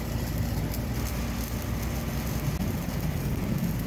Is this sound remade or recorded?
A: recorded